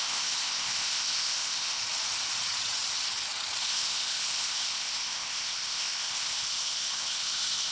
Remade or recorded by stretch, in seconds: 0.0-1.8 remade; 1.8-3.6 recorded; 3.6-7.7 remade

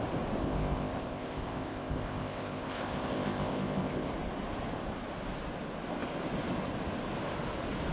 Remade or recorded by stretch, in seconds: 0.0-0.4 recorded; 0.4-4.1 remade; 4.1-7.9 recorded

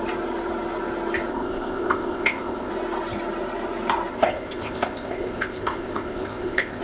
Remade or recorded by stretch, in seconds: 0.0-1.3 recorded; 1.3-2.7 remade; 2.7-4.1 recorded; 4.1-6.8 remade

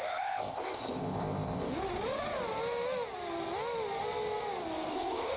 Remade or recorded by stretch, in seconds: 0.0-1.7 remade; 1.7-4.9 recorded; 4.9-5.4 remade